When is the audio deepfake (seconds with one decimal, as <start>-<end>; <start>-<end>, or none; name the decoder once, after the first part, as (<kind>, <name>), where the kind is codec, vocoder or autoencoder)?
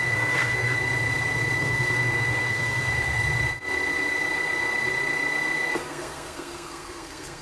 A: 0.0-0.7 (codec, SNAC); 1.6-3.2; 5.7-7.4